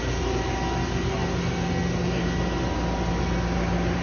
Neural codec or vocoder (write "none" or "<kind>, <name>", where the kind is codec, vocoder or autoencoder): none